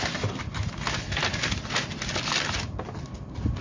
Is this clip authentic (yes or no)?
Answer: yes